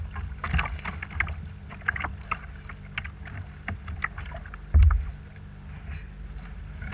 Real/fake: real